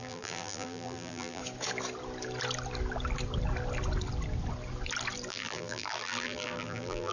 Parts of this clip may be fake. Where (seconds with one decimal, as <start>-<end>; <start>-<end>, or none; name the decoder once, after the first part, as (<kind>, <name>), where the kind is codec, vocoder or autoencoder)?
0.0-1.4 (vocoder, BigVGAN v2); 5.3-7.1

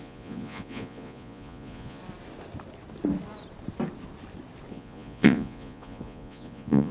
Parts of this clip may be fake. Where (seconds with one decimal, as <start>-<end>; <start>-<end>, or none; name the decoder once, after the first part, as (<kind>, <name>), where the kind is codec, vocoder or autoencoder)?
0.0-2.0 (vocoder, Vocos); 4.7-6.9

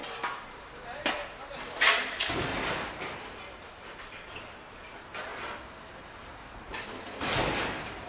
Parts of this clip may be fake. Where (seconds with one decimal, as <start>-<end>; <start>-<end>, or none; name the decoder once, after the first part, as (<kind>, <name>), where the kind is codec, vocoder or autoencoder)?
0.0-5.3 (vocoder, BigVGAN v2); 6.0-8.1

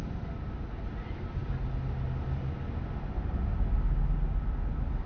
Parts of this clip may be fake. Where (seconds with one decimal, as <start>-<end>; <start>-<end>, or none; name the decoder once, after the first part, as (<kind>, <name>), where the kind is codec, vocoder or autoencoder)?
none

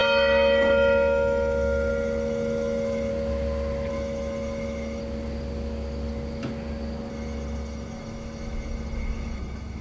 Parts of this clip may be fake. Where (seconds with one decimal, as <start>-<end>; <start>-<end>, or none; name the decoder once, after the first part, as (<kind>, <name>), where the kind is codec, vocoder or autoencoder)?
0.0-3.1 (autoencoder, DAC-VAE); 3.9-5.0; 7.1-9.8